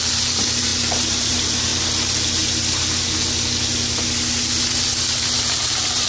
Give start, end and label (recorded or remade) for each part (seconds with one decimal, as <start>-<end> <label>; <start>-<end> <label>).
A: 0.0-1.7 remade; 1.7-5.4 recorded; 5.4-6.1 remade